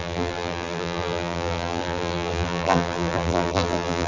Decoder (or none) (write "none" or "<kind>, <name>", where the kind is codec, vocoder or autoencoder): vocoder, BigVGAN v2